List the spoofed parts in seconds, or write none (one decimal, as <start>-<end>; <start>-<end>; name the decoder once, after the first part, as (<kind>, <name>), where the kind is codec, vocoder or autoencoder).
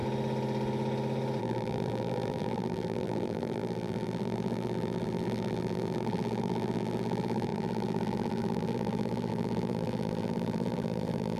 1.4-11.4 (vocoder, BigVGAN v2)